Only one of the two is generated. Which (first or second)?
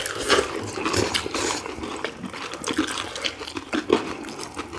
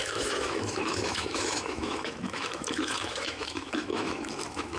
second